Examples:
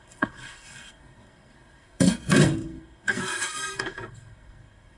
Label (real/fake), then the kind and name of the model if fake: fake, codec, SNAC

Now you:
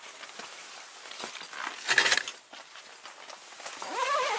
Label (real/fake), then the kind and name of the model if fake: real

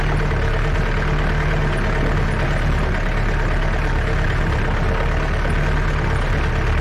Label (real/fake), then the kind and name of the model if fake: real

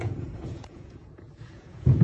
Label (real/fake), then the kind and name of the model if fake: fake, vocoder, Vocos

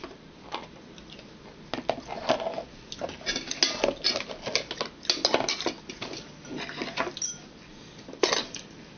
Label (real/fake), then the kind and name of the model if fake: real